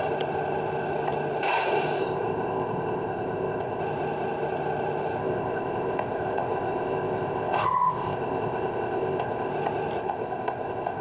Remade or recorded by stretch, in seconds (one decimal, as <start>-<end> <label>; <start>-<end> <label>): 0.0-2.0 recorded; 2.0-3.8 remade; 3.8-5.2 recorded; 5.2-9.5 remade; 9.5-10.0 recorded; 10.0-11.0 remade